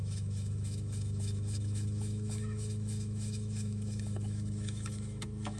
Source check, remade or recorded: remade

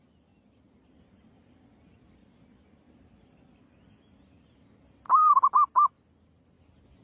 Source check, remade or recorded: recorded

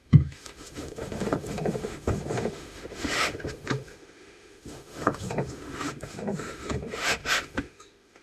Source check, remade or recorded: remade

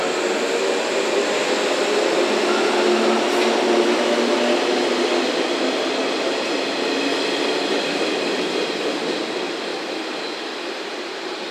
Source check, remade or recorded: recorded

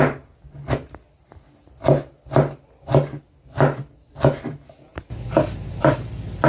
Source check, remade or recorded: recorded